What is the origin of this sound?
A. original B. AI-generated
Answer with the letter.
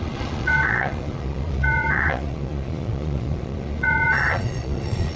B